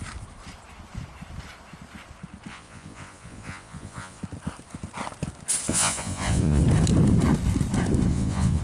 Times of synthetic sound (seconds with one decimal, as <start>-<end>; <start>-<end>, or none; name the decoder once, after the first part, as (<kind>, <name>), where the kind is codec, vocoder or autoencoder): 2.5-4.2 (vocoder, Vocos); 5.7-6.6; 8.1-8.6